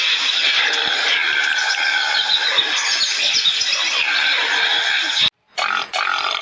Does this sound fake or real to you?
real